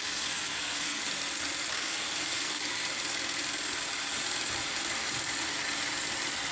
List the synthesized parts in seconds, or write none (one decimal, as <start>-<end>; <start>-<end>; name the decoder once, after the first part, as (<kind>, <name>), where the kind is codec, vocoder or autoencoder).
0.0-1.0 (codec, SNAC); 1.7-2.6